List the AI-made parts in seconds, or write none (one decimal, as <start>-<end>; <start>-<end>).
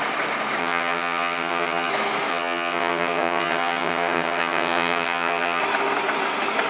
0.6-1.9; 2.3-5.6